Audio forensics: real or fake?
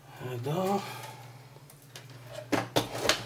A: real